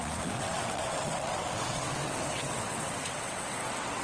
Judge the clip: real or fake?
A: fake